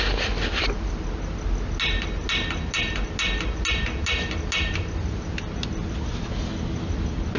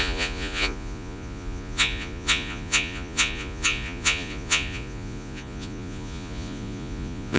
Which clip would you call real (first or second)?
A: first